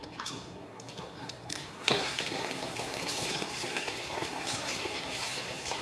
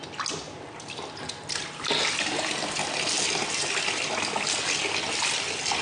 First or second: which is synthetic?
first